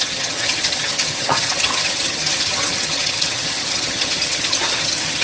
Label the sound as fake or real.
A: fake